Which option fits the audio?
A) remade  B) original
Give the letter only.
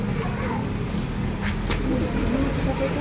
B